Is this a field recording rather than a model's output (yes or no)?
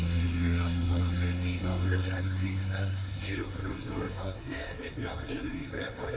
no